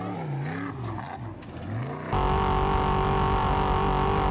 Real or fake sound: real